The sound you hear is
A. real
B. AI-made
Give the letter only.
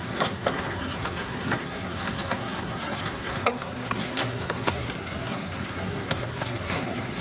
B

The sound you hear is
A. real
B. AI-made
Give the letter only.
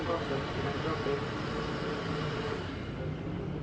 A